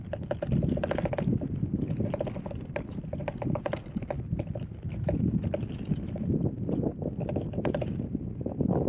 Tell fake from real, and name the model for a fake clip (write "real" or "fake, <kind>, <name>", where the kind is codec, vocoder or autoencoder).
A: real